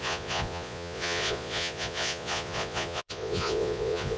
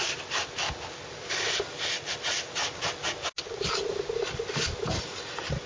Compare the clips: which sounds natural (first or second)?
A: second